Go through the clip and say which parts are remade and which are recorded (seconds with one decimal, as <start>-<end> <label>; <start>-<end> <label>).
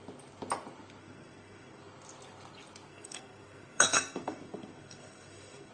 0.0-1.0 recorded; 1.0-1.8 remade; 1.8-2.9 recorded; 2.9-5.7 remade